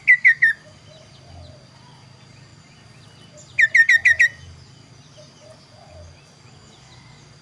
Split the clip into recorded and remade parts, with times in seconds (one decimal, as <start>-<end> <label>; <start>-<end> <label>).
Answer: 0.0-7.4 recorded

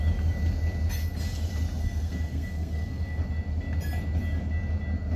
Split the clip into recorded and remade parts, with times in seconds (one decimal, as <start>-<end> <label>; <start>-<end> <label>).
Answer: 0.0-1.8 recorded; 1.8-3.2 remade; 3.2-5.2 recorded